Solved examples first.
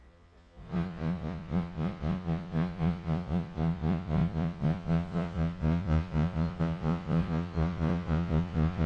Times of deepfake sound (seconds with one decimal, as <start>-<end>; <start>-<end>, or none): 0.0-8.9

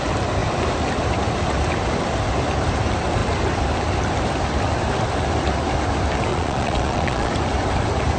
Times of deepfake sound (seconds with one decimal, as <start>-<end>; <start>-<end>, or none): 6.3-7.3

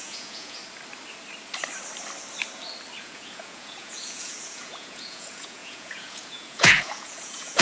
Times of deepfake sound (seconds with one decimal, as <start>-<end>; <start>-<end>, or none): 0.0-0.6; 3.0-7.6

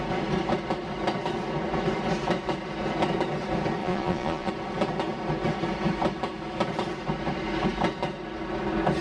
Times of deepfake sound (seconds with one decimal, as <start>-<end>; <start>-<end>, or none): 3.8-4.5

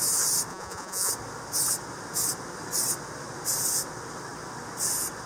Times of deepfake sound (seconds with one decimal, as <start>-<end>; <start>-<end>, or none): 0.5-1.1

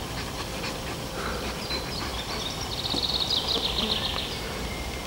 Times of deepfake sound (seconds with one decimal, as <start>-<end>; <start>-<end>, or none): none